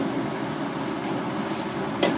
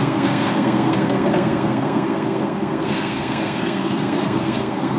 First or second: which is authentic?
first